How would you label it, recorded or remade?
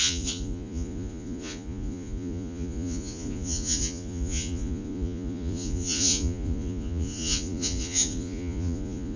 remade